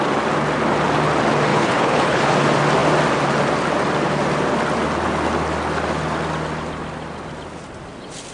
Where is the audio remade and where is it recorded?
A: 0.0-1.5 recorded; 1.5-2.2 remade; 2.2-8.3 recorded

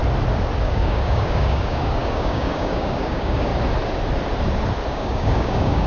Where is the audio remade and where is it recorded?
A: 0.0-0.6 recorded; 0.6-3.5 remade; 3.5-4.9 recorded; 4.9-5.9 remade

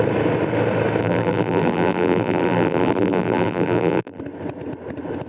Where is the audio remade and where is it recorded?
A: 0.0-1.0 recorded; 1.0-4.2 remade; 4.2-5.3 recorded